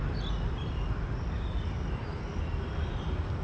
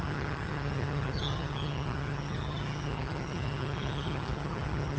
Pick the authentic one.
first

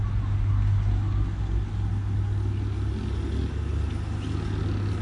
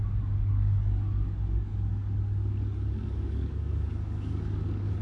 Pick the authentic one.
first